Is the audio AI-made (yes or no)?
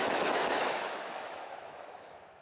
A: yes